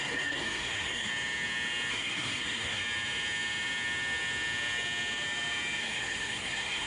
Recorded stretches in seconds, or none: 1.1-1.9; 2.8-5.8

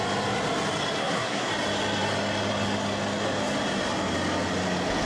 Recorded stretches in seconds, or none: 0.0-1.0; 1.5-5.1

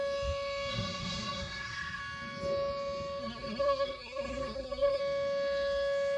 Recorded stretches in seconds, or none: 0.0-0.7; 2.0-3.2; 5.0-6.2

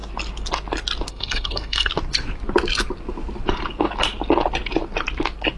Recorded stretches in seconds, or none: 0.0-1.1; 1.9-5.6